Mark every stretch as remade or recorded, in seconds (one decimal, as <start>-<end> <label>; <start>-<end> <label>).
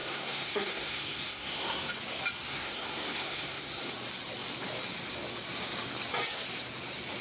0.0-1.9 remade; 1.9-2.5 recorded; 2.5-3.9 remade; 3.9-7.2 recorded